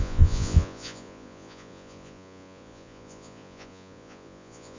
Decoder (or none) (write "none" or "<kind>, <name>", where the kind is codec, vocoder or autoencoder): vocoder, Vocos